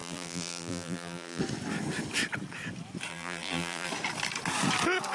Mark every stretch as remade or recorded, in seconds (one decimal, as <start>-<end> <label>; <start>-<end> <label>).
0.0-1.4 remade; 1.4-3.1 recorded; 3.1-3.9 remade; 3.9-5.1 recorded